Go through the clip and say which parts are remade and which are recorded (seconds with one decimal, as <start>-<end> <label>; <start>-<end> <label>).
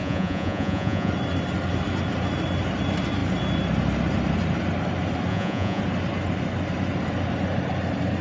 0.0-1.1 remade; 1.1-5.3 recorded; 5.3-5.8 remade; 5.8-8.2 recorded